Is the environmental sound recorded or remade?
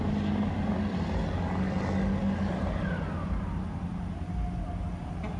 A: recorded